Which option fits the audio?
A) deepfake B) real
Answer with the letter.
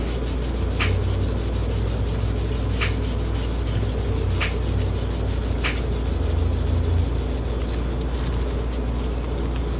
B